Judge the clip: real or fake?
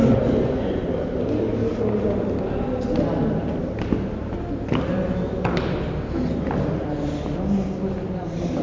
real